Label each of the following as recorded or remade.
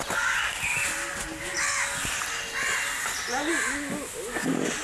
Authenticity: recorded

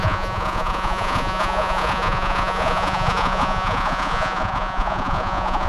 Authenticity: remade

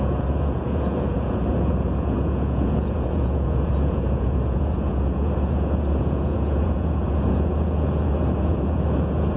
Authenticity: remade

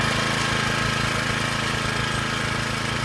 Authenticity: recorded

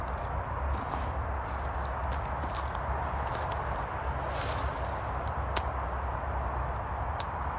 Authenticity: recorded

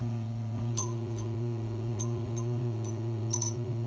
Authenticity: remade